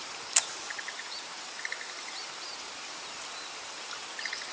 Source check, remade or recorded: remade